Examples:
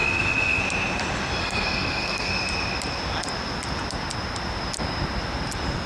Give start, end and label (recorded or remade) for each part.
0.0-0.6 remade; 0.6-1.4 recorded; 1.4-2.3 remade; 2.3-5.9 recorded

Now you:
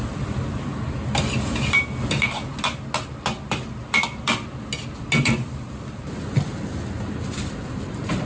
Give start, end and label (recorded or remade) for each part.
0.0-0.7 remade; 0.7-5.2 recorded; 5.2-8.3 remade

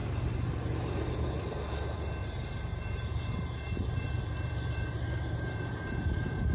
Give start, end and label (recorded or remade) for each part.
0.0-0.6 remade; 0.6-2.2 recorded; 2.2-6.1 remade; 6.1-6.5 recorded

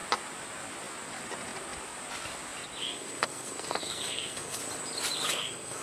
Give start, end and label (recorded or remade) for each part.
0.0-2.8 recorded; 2.8-4.6 remade; 4.6-5.3 recorded; 5.3-5.8 remade